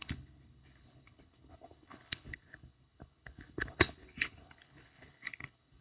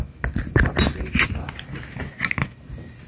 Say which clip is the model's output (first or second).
first